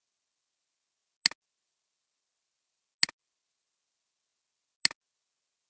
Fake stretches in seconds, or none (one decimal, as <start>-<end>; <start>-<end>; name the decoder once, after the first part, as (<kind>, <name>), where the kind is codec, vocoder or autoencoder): none